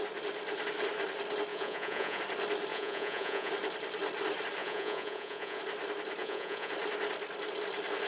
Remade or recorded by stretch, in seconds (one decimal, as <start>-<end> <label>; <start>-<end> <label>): 0.0-1.5 recorded; 1.5-2.2 remade; 2.2-2.7 recorded; 2.7-3.5 remade; 3.5-4.6 recorded; 4.6-5.6 remade; 5.6-6.2 recorded; 6.2-6.7 remade; 6.7-8.1 recorded